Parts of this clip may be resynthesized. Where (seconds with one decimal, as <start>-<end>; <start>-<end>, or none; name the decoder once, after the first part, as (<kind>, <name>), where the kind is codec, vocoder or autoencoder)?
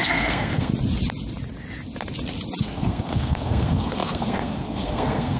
0.0-0.7 (codec, SNAC); 2.6-5.4